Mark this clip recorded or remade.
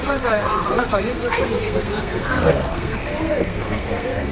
remade